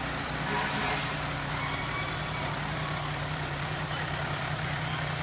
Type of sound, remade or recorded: remade